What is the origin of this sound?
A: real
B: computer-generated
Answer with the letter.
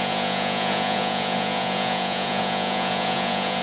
B